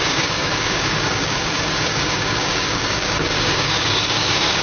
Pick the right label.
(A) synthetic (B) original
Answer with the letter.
A